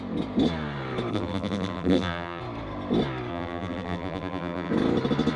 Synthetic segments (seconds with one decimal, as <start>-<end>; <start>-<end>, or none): 1.1-2.4; 3.3-4.7